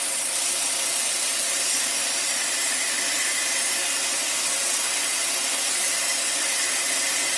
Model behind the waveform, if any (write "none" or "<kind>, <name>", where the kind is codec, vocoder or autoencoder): none